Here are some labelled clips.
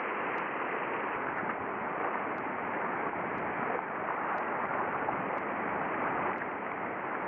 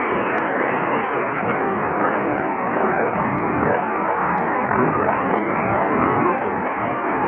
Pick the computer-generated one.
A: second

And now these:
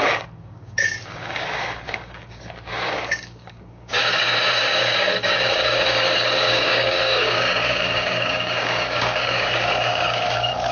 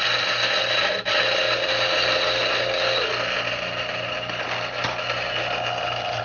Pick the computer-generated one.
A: first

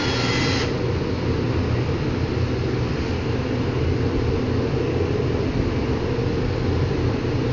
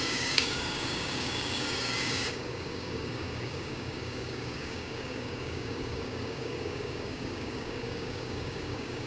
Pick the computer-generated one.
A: second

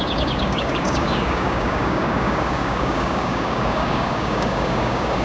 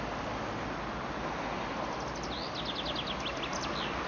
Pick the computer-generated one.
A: first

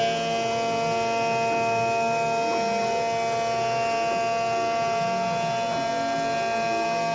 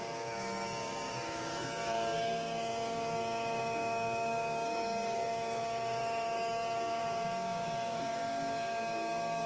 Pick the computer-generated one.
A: second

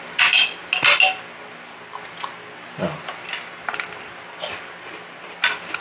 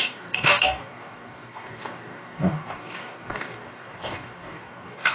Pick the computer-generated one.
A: second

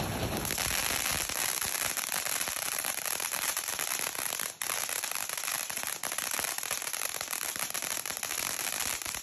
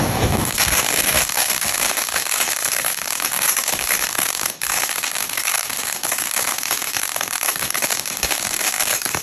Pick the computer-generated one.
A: second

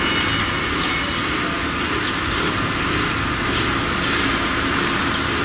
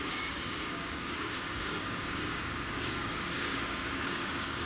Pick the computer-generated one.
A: second